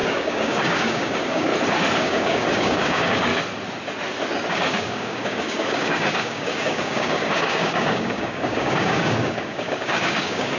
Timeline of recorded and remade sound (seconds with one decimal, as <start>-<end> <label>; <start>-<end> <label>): 0.0-1.5 remade; 1.5-2.0 recorded; 2.0-3.3 remade; 3.3-4.5 recorded; 4.5-10.6 remade